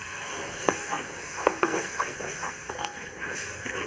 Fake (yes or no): yes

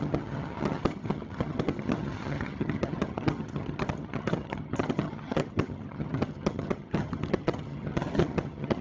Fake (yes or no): yes